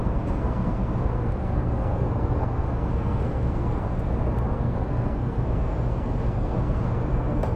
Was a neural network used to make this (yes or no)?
yes